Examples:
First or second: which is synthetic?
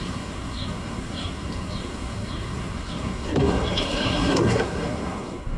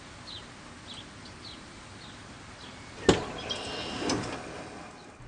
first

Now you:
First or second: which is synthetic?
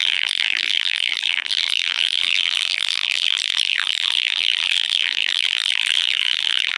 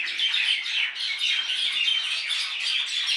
first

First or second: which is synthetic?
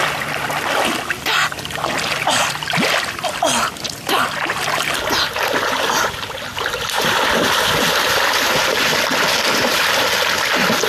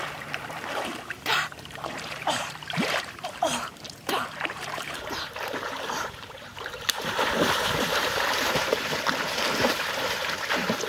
second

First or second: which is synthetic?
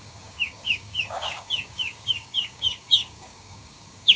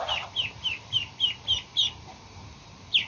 first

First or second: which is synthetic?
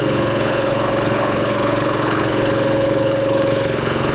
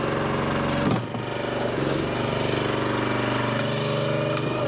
first